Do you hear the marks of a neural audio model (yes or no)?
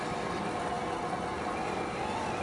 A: no